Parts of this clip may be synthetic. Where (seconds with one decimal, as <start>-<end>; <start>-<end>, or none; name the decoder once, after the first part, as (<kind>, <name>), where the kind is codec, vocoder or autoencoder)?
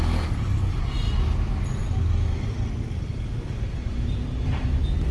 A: none